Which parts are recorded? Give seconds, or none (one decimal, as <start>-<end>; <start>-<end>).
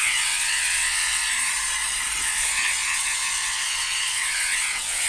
1.2-2.2